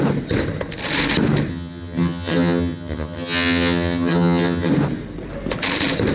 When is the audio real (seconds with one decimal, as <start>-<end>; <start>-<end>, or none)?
0.0-1.5; 4.7-6.1